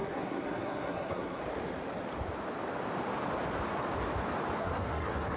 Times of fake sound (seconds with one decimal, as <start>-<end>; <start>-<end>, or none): 0.0-1.4; 4.6-5.4

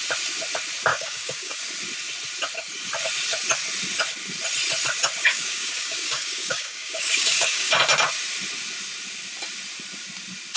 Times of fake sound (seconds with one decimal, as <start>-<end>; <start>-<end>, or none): 0.9-1.6; 5.2-7.8

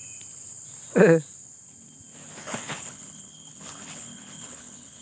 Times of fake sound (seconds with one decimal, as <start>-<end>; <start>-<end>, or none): 2.4-5.0

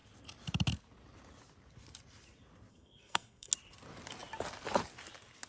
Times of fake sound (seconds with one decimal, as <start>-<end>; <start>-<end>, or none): 2.7-3.5